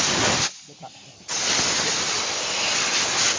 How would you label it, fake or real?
real